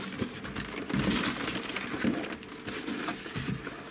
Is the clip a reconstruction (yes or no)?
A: no